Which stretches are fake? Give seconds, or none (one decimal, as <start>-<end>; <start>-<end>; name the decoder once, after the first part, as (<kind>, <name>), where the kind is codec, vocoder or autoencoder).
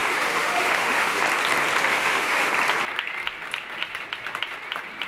0.0-1.2 (autoencoder, DAC-VAE); 1.8-2.5